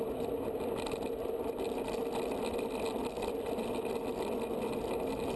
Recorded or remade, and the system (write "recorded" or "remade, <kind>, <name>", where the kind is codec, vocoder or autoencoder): recorded